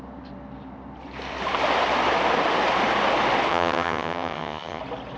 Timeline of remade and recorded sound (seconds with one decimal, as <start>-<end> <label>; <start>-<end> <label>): 0.0-3.5 recorded; 3.5-4.8 remade; 4.8-5.2 recorded